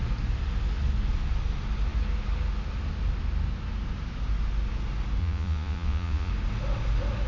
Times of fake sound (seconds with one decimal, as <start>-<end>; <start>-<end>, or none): 5.2-6.3